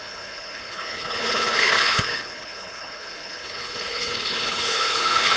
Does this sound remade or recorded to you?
remade